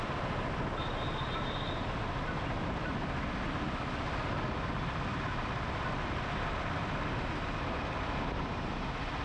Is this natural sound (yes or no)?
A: yes